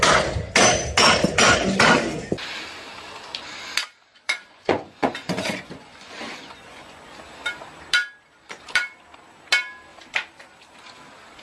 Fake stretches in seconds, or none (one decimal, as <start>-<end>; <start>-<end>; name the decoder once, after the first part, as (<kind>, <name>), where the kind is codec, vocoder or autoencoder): 4.1-7.2 (vocoder, Vocos)